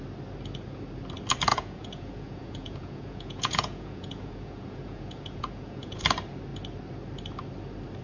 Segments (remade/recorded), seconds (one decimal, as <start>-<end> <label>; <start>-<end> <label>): 0.0-1.5 recorded; 1.5-6.0 remade; 6.0-8.0 recorded